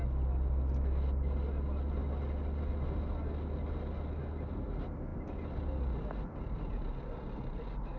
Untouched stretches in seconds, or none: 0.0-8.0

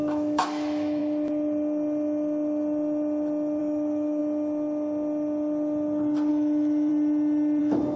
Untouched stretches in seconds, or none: 1.0-3.6; 4.2-6.3; 6.9-7.6

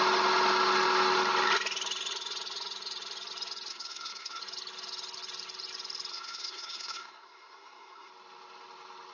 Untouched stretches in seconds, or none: 0.0-3.7; 4.4-6.1; 8.1-9.1

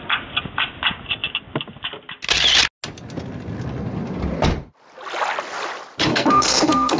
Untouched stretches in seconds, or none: 0.0-6.1

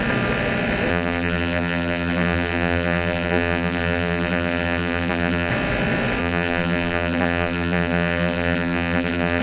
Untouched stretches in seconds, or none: 0.0-0.9; 5.5-6.2

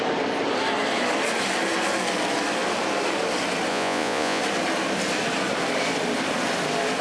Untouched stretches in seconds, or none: 0.0-3.7; 4.4-7.0

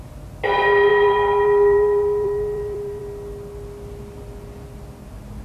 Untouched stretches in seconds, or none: 0.0-0.9; 3.0-5.4